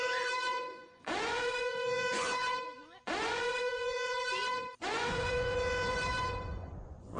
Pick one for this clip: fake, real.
fake